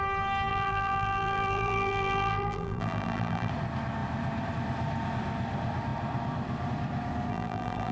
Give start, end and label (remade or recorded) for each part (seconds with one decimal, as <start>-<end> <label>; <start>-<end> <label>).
0.0-0.5 recorded; 0.5-3.5 remade; 3.5-7.3 recorded; 7.3-7.9 remade